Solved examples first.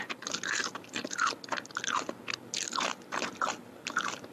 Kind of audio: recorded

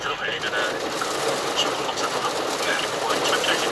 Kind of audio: recorded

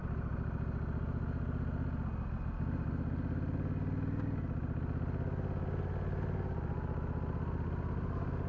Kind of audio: recorded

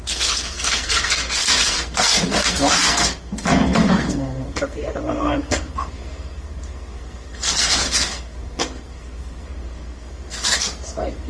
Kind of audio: remade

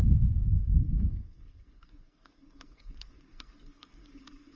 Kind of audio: remade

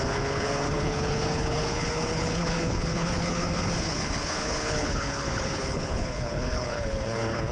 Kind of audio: remade